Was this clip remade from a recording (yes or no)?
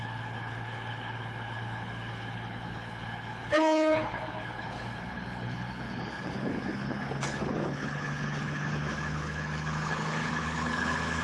yes